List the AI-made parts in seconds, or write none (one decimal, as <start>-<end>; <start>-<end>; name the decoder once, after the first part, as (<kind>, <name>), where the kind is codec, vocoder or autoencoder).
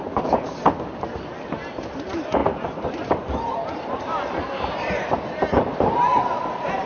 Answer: 2.4-4.9 (vocoder, BigVGAN v2)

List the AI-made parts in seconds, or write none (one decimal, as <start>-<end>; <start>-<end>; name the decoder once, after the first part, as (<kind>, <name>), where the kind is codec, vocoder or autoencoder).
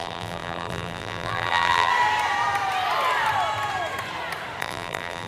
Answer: 0.0-1.9 (vocoder, BigVGAN v2); 4.6-5.3